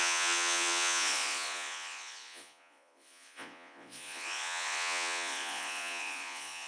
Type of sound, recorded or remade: remade